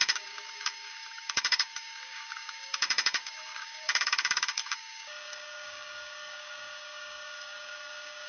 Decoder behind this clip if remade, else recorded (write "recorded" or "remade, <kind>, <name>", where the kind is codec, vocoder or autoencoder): remade, codec, DAC